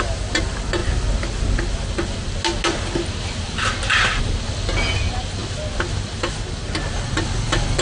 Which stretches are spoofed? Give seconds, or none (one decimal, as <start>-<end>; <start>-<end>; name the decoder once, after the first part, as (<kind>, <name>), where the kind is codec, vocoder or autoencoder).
none